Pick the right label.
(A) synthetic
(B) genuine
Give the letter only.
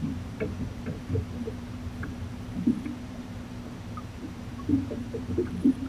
A